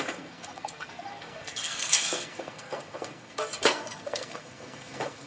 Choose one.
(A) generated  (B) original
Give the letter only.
A